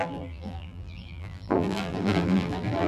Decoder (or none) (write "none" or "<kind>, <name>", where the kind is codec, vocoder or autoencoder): vocoder, BigVGAN v2